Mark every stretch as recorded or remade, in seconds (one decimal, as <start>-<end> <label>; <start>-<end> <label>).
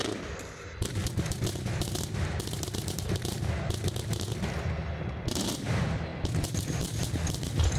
0.0-7.8 recorded